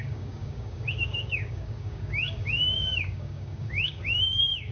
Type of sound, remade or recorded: remade